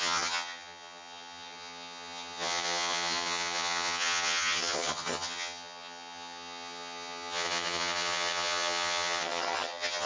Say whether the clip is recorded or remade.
remade